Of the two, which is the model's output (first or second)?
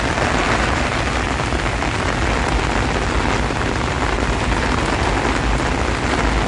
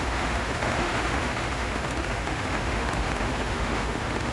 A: second